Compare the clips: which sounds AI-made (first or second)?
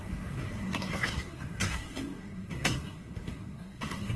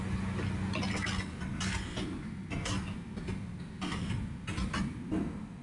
first